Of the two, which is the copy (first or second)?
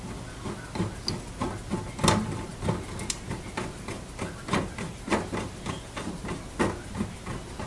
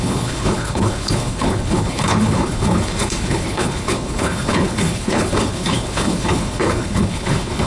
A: second